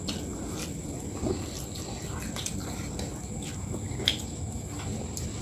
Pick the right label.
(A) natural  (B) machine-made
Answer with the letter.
A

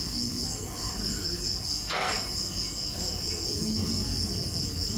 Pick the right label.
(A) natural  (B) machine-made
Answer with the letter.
B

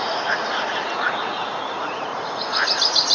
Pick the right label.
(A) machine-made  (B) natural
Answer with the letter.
A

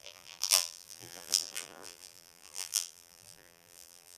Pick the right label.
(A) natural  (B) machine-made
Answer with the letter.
B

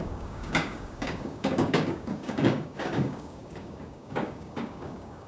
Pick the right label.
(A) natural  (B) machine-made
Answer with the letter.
B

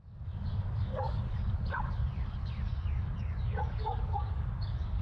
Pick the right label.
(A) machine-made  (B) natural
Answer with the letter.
A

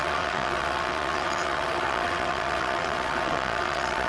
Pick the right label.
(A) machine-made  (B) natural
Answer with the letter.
A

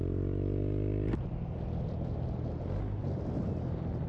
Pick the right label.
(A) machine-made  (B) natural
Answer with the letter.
B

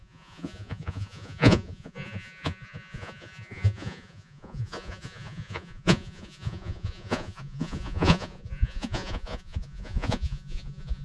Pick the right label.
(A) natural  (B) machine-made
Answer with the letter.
B